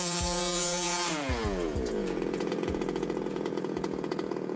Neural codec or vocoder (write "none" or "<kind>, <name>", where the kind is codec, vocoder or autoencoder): vocoder, Vocos